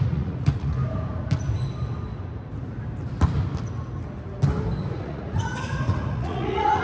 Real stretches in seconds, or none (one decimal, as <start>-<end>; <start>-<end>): 0.8-4.9